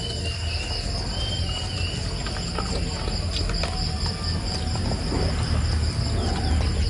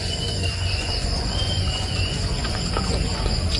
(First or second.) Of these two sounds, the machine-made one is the second